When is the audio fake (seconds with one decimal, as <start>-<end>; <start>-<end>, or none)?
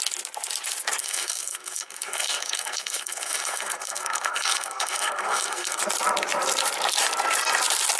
1.0-5.8